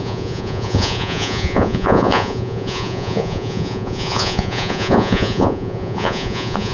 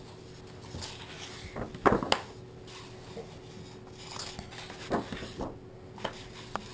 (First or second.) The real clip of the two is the second